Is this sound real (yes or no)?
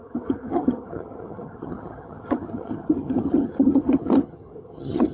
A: no